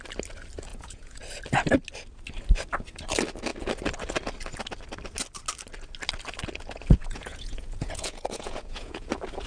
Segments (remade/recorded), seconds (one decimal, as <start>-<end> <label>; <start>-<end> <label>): 0.0-0.7 recorded; 0.7-1.2 remade; 1.2-7.0 recorded; 7.0-9.1 remade; 9.1-9.5 recorded